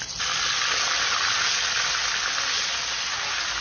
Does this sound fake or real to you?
real